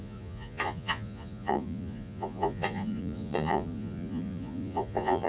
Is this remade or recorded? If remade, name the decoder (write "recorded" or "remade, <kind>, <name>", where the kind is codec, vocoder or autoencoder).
remade, vocoder, Vocos